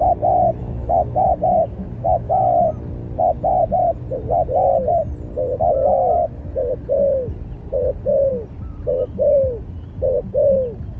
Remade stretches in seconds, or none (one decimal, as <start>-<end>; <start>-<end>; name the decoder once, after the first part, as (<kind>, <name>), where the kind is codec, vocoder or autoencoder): 0.6-2.6 (autoencoder, DAC-VAE)